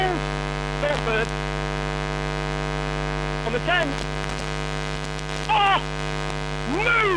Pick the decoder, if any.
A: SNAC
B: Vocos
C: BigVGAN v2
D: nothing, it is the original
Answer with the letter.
D